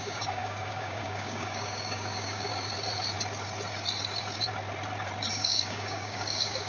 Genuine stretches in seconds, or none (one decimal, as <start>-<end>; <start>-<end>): 2.5-5.3